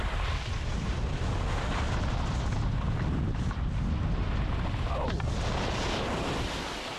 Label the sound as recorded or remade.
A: recorded